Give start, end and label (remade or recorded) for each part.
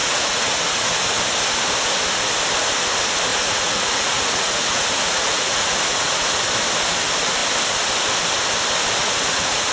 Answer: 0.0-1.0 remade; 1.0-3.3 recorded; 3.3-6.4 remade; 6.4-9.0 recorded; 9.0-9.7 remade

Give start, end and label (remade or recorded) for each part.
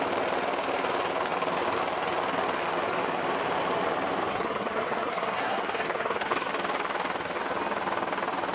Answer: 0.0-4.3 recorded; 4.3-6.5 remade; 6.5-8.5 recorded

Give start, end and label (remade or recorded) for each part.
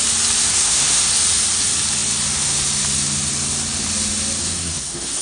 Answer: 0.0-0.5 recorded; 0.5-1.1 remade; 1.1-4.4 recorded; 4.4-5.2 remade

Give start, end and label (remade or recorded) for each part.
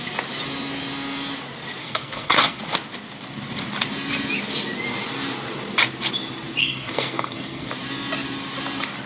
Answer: 0.0-1.8 recorded; 1.8-2.6 remade; 2.6-6.6 recorded; 6.6-7.7 remade; 7.7-9.1 recorded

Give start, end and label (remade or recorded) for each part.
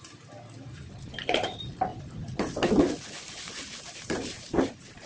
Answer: 0.0-1.9 remade; 1.9-3.8 recorded; 3.8-5.1 remade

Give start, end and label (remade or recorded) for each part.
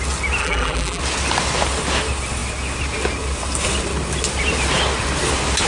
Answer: 0.0-0.4 recorded; 0.4-1.0 remade; 1.0-5.7 recorded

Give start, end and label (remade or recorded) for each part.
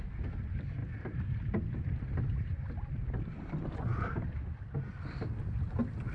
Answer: 0.0-6.1 recorded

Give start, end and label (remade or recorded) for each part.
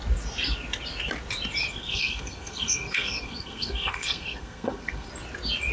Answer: 0.0-1.7 recorded; 1.7-5.1 remade; 5.1-5.7 recorded